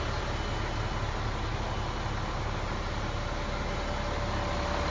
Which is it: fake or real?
real